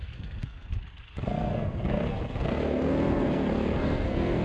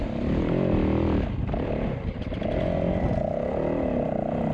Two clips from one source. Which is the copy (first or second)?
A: first